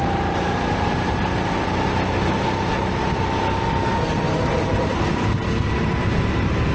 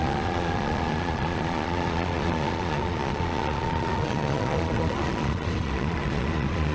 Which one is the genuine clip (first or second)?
first